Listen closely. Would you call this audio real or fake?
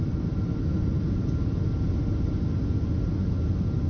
real